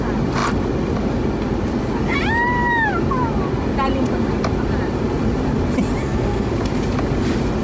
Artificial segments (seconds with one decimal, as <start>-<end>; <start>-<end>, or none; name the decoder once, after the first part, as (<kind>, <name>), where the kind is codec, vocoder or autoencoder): 6.0-6.5 (codec, SNAC)